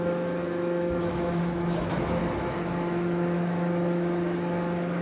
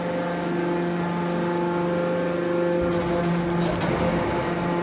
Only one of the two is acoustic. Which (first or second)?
second